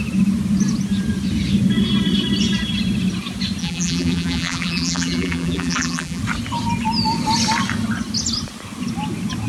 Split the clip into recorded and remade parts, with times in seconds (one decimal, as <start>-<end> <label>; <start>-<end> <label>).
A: 0.0-3.6 recorded; 3.6-6.2 remade; 6.2-9.5 recorded